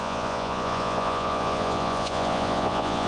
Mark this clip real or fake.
fake